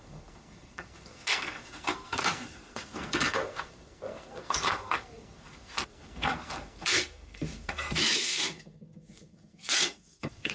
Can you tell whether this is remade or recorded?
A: remade